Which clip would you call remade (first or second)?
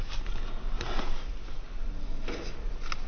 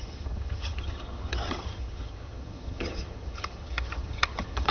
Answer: second